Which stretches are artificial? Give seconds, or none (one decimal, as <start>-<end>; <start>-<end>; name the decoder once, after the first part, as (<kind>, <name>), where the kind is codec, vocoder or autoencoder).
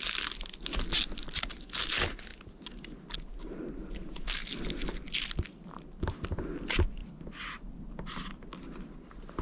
none